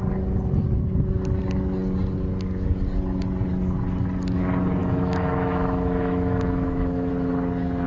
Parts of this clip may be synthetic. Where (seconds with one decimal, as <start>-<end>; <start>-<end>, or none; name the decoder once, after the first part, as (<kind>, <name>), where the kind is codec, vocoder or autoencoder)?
4.8-7.1 (autoencoder, DAC-VAE)